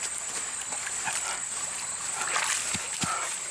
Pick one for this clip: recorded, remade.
recorded